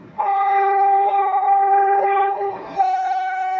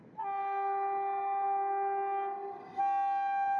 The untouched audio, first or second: second